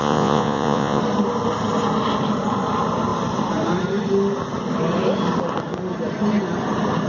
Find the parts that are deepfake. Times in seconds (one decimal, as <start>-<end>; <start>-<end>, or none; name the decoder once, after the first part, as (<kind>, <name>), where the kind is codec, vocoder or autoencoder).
0.0-1.0 (vocoder, Vocos)